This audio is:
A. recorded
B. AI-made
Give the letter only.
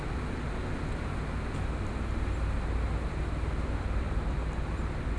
A